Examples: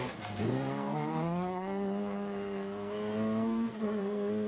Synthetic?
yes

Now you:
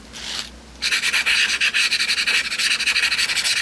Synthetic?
no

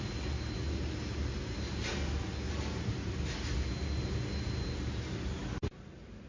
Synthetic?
no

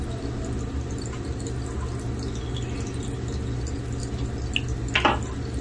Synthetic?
no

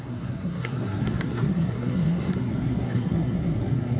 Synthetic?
yes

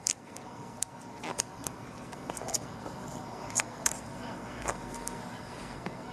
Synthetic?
yes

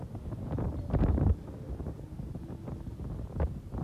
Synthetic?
no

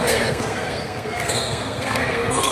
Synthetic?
yes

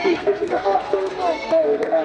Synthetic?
yes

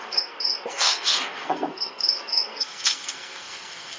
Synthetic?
yes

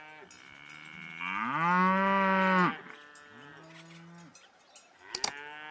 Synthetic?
no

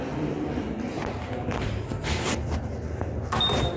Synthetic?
no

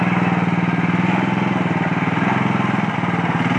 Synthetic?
no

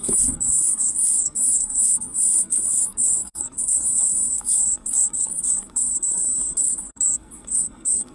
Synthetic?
yes